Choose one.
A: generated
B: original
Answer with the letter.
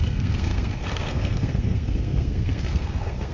A